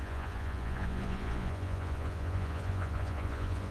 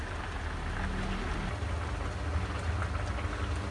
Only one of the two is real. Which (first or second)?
second